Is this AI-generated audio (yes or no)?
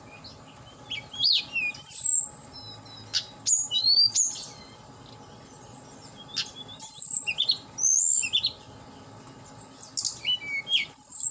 no